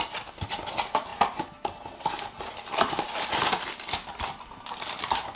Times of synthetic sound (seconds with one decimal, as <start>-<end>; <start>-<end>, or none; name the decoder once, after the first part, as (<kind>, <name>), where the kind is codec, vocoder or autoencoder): none